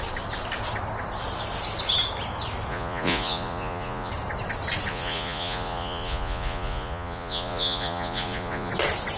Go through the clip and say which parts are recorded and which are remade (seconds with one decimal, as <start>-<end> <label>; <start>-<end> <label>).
0.0-2.7 recorded; 2.7-4.1 remade; 4.1-4.9 recorded; 4.9-8.7 remade; 8.7-9.2 recorded